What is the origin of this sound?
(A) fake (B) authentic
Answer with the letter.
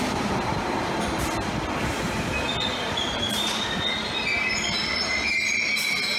B